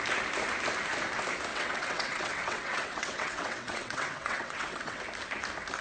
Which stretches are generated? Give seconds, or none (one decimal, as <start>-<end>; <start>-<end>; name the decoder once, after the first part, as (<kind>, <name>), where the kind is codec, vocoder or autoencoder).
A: 1.5-5.0 (vocoder, WaveNeXt)